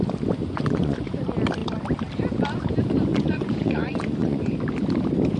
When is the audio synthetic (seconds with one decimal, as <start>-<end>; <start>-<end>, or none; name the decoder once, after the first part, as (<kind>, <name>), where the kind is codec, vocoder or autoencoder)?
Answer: 0.4-1.2 (vocoder, Vocos); 3.1-4.4